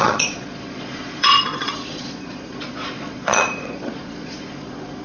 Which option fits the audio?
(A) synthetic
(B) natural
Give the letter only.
A